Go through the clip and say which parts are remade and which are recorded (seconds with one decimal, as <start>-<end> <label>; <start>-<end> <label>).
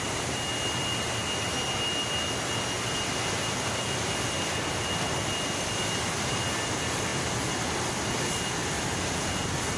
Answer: 0.0-9.8 recorded